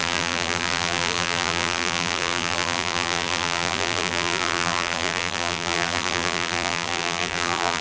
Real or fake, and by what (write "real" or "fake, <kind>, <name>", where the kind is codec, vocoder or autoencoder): fake, vocoder, BigVGAN v2